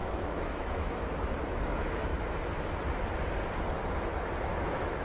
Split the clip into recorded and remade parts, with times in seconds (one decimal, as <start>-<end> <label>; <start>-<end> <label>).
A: 0.0-2.1 remade; 2.1-4.4 recorded; 4.4-5.0 remade